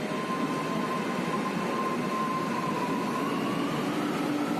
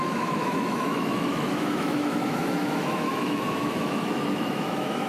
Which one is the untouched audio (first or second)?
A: first